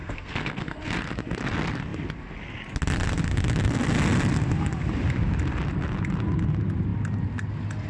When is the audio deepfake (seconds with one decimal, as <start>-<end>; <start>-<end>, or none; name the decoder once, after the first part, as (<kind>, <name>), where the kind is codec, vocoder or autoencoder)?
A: 0.0-0.8 (codec, SNAC)